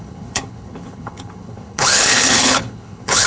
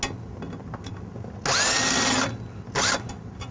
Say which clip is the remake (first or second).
first